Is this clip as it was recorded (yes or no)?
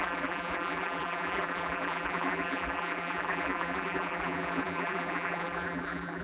no